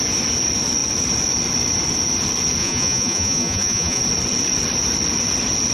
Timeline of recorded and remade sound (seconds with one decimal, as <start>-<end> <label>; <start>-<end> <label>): 0.0-2.6 recorded; 2.6-4.0 remade; 4.0-5.7 recorded